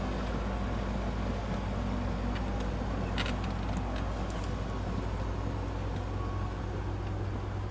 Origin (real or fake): real